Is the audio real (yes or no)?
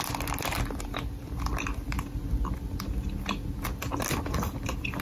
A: yes